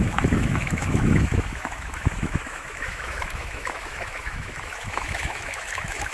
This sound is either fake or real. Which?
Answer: fake